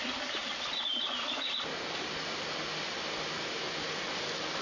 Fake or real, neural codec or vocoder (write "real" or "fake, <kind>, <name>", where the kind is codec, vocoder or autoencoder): real